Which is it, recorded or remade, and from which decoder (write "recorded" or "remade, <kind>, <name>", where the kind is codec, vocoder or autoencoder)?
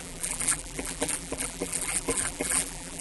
remade, vocoder, BigVGAN v2